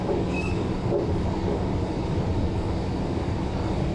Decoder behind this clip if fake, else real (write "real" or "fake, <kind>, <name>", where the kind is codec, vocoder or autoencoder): fake, codec, DAC